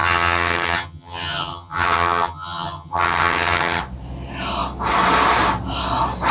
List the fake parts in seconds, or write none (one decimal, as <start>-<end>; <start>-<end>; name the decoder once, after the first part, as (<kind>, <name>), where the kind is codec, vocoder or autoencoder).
0.0-3.8 (vocoder, HiFi-GAN)